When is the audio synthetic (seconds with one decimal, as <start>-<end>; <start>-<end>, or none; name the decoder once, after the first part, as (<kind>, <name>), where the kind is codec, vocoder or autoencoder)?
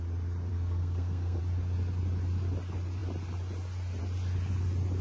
0.5-1.4 (codec, SNAC)